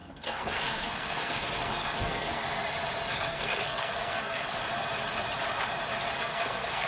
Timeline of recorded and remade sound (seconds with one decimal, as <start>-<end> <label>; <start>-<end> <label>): 0.0-2.4 remade; 2.4-3.1 recorded; 3.1-4.6 remade; 4.6-6.1 recorded; 6.1-6.9 remade